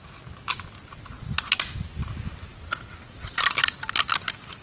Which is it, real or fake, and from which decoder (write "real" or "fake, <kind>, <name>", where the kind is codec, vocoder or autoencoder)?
real